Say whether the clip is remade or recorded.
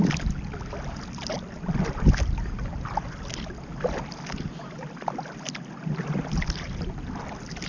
recorded